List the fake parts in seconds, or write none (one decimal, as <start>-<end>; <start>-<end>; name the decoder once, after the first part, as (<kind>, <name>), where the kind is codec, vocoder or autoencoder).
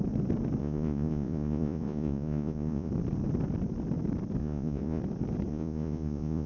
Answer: 0.6-2.9 (vocoder, Vocos); 4.4-5.0; 5.5-6.5